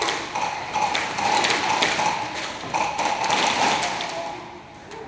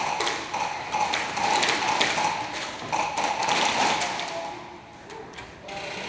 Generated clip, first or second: first